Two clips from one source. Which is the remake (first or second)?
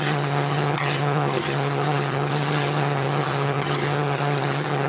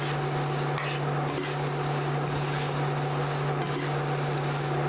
first